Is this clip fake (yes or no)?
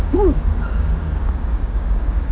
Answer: yes